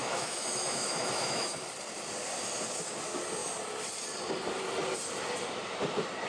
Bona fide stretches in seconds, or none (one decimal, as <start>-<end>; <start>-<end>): 1.6-6.3